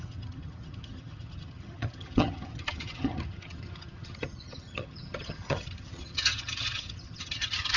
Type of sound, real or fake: fake